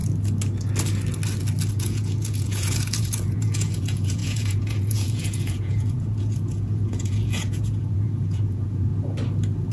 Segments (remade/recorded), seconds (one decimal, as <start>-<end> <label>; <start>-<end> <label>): 0.0-1.7 recorded; 1.7-8.9 remade; 8.9-9.7 recorded